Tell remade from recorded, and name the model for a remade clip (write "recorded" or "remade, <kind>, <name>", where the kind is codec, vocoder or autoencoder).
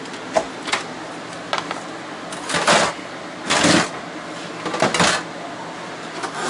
recorded